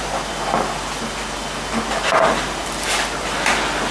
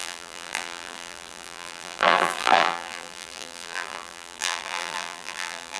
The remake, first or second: second